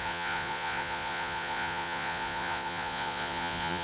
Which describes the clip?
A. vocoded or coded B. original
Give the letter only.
A